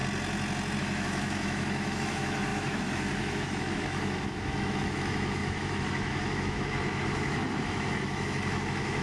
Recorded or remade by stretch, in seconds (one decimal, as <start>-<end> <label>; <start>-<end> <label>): 0.0-0.8 recorded; 0.8-9.0 remade